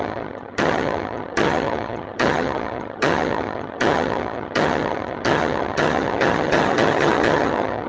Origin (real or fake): fake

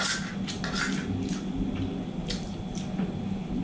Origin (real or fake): real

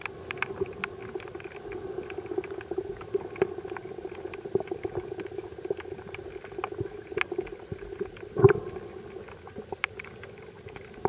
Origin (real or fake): real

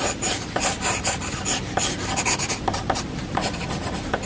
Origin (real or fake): real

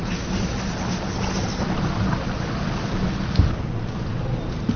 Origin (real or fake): real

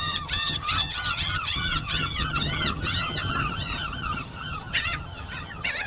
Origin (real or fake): fake